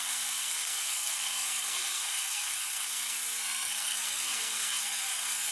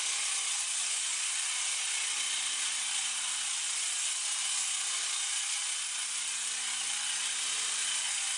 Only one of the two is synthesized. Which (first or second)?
first